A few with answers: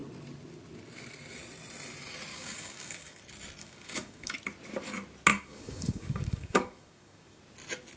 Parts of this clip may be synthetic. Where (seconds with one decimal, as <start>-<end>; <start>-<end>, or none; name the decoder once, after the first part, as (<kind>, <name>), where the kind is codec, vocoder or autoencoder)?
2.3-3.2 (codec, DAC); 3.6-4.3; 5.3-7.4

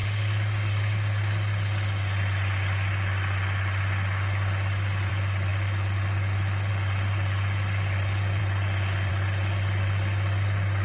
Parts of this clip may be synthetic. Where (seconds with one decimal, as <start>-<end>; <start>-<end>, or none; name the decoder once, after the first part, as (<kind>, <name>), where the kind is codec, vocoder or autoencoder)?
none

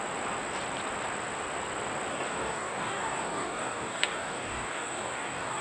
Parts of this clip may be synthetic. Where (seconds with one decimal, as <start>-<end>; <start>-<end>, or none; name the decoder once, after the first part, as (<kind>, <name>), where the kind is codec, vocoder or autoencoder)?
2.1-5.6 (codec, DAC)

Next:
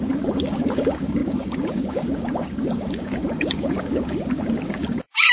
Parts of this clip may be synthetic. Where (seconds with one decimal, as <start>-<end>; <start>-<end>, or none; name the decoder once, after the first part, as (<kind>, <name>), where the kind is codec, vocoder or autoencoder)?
0.0-5.3 (codec, DAC)

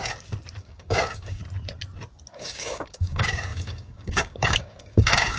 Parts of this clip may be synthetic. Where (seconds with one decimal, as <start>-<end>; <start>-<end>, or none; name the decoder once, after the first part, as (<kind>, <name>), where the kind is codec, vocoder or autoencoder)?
0.6-1.4 (codec, DAC); 2.3-5.4